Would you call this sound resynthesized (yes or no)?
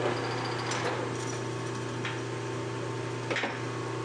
no